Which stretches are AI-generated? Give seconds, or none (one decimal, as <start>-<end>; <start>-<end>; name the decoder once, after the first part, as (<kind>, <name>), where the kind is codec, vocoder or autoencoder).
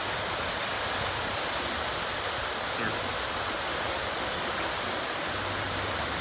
none